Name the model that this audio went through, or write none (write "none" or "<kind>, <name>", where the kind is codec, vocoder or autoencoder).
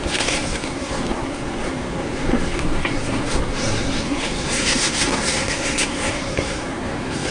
codec, SNAC